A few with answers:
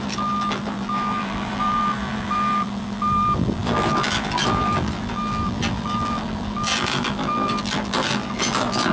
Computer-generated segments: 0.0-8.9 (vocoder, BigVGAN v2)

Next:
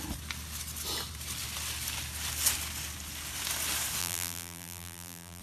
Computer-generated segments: 4.0-5.4 (vocoder, BigVGAN v2)

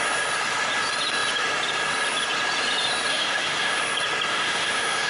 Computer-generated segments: 3.1-3.8 (autoencoder, DAC-VAE); 4.3-5.1

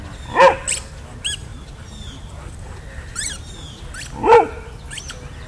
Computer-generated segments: none

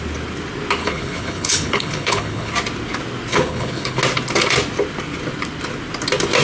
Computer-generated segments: 0.8-2.5 (codec, HILCodec); 3.3-4.0

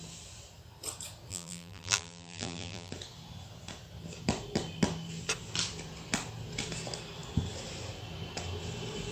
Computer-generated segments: 1.3-2.9 (vocoder, BigVGAN v2)

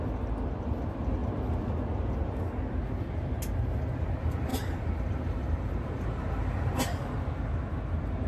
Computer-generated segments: 4.5-6.0 (vocoder, BigVGAN v2)

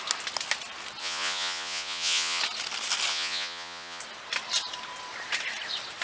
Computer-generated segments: 1.0-2.4 (vocoder, Vocos); 3.1-4.0